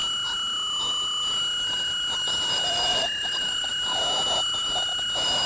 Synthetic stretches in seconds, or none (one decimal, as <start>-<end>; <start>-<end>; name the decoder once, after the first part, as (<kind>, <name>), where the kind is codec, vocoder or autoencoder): 2.9-3.7 (vocoder, BigVGAN v2)